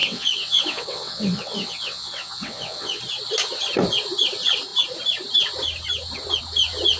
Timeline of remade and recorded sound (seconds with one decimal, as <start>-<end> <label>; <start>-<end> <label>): 0.0-3.0 remade; 3.0-7.0 recorded